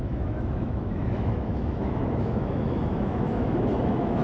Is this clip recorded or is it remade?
remade